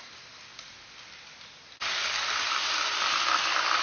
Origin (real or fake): real